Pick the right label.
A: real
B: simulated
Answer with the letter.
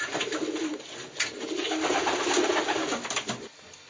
A